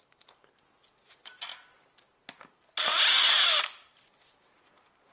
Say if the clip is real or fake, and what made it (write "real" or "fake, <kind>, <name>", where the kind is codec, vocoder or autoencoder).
real